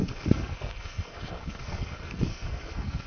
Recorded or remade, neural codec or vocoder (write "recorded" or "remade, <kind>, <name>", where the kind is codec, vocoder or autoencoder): remade, codec, SNAC